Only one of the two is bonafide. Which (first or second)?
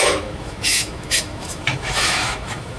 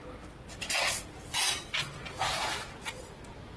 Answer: second